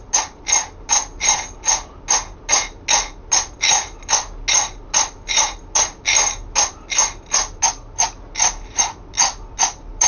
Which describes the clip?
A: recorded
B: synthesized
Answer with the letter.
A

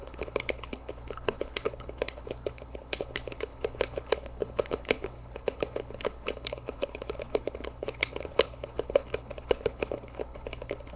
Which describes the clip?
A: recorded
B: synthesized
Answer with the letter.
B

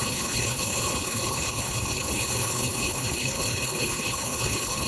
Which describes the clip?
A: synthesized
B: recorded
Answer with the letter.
A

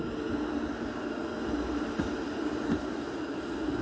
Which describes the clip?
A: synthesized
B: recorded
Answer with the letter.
B